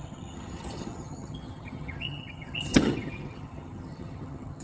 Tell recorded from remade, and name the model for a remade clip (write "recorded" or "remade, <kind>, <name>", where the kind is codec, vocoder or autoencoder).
remade, vocoder, HiFi-GAN